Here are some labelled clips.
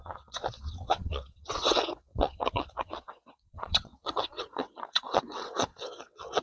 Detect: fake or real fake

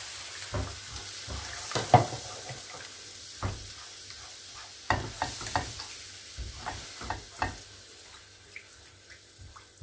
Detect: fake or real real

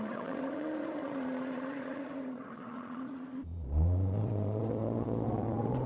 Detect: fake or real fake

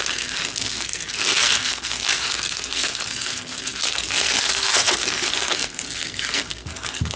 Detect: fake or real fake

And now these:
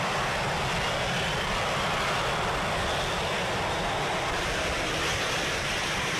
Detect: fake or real real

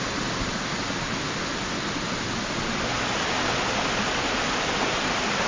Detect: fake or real real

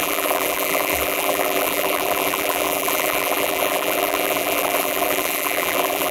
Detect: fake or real fake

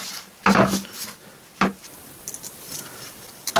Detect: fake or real real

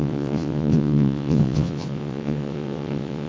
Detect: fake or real fake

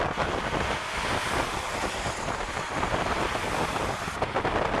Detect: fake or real real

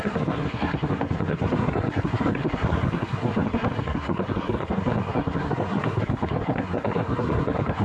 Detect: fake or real fake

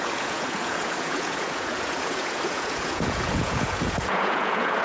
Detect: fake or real fake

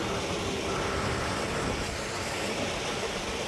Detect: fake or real real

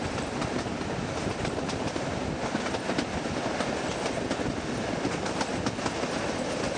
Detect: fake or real real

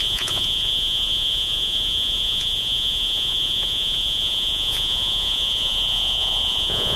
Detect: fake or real fake